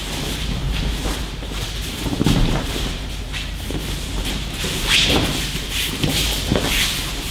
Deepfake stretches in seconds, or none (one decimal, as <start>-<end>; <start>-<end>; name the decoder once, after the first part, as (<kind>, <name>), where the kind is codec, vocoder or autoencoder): 0.0-0.6 (vocoder, BigVGAN v2); 1.2-7.3